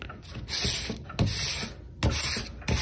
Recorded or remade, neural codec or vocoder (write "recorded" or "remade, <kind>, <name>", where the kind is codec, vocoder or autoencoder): recorded